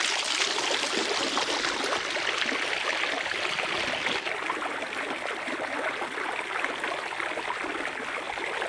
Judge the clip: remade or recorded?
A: recorded